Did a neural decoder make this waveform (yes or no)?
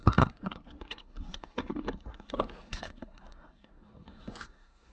yes